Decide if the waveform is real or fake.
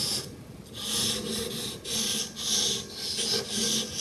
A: real